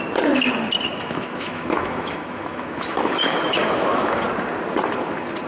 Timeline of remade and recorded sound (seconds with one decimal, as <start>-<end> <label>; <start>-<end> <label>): 0.0-0.9 recorded; 0.9-4.2 remade; 4.2-5.5 recorded

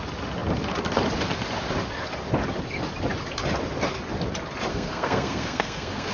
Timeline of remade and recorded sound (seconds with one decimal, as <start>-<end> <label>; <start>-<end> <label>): 0.0-4.7 recorded; 4.7-6.1 remade

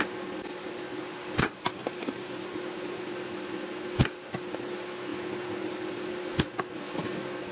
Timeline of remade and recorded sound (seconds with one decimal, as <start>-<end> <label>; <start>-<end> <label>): 0.0-1.7 recorded; 1.7-2.4 remade; 2.4-7.5 recorded

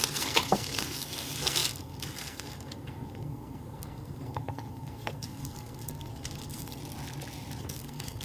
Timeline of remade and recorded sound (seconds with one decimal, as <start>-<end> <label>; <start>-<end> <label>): 0.0-6.8 remade; 6.8-7.6 recorded; 7.6-8.2 remade

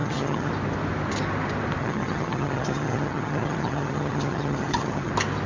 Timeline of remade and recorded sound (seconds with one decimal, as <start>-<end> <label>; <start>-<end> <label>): 0.0-0.5 remade; 0.5-1.8 recorded; 1.8-5.1 remade; 5.1-5.5 recorded

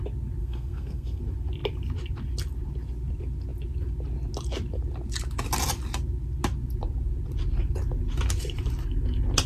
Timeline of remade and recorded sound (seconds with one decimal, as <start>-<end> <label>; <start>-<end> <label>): 0.0-0.4 recorded; 0.4-1.2 remade; 1.2-9.5 recorded